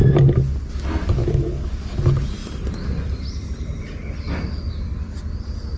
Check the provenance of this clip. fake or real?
real